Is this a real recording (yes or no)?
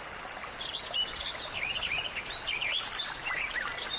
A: yes